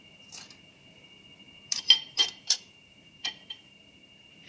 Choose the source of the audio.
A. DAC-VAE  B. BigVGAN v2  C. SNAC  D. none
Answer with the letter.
B